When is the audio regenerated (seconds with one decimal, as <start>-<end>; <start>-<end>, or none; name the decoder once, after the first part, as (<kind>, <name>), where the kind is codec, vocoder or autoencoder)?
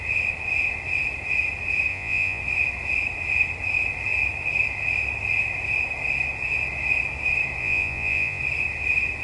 1.9-2.4 (vocoder, Vocos); 7.6-8.4